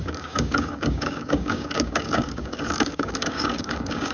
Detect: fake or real fake